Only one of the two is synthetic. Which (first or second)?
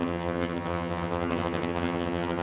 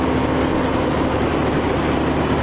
first